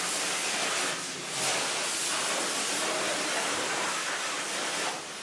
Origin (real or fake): real